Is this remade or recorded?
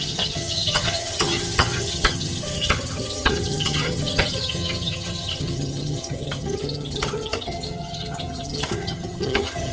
remade